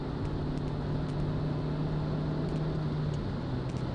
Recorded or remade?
recorded